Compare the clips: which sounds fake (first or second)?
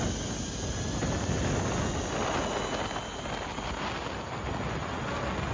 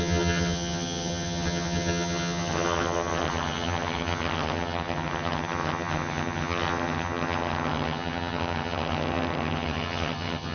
second